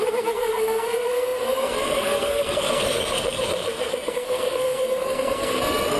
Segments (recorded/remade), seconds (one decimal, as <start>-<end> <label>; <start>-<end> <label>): 0.0-6.0 remade